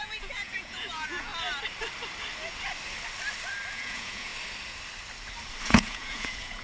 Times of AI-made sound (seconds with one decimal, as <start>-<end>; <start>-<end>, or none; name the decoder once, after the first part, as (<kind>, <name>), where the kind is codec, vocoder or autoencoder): 0.0-1.3 (vocoder, Vocos); 3.7-4.3; 5.6-6.6